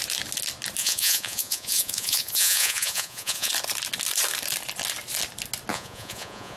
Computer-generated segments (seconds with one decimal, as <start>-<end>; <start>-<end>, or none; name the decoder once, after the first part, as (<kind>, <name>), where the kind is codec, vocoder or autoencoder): 0.8-3.5 (vocoder, Vocos); 5.7-6.6